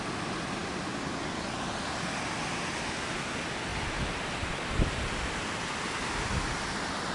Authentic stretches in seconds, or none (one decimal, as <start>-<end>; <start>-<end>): 0.0-7.1